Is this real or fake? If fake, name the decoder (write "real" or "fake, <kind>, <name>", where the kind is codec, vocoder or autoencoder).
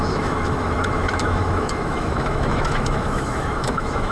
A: fake, autoencoder, DAC-VAE